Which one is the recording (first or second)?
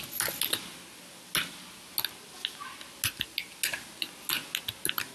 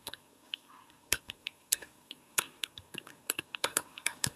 first